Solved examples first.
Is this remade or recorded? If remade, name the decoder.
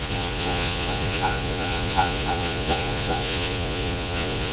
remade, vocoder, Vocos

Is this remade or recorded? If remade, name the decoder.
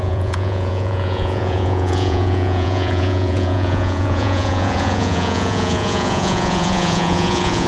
remade, vocoder, Vocos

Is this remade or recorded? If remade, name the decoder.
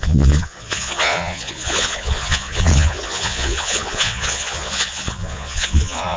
remade, vocoder, Vocos